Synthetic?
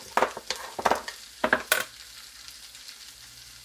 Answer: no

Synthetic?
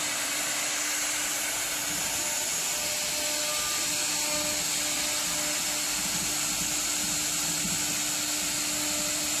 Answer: no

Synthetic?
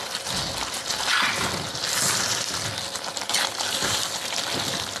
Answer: no